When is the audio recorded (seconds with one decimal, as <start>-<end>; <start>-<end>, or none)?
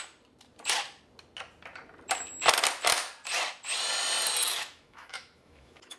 0.0-4.4